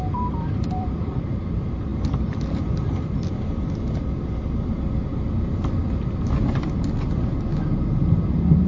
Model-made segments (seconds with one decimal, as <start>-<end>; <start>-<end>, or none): 0.0-1.9; 7.1-7.5